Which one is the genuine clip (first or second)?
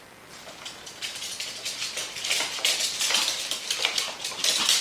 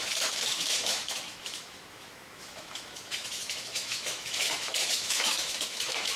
first